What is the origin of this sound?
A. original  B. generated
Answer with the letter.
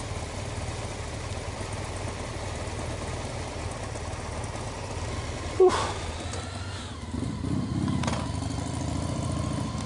A